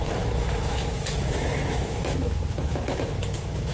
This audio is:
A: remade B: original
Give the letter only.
A